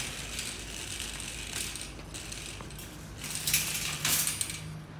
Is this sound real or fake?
real